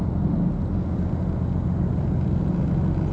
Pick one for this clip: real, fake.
real